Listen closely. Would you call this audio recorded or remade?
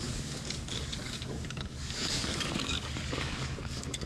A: remade